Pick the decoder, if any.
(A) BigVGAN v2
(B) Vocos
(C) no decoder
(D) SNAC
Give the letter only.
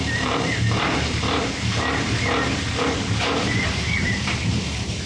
A